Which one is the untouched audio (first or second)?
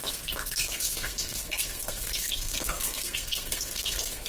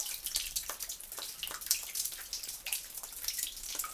second